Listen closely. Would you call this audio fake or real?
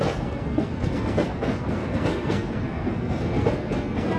fake